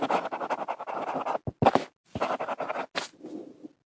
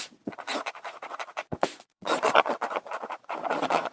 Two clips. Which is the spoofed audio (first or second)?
second